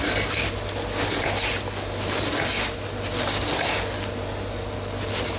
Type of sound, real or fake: real